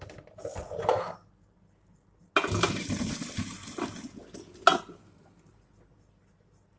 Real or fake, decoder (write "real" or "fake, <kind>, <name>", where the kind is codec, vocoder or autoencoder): real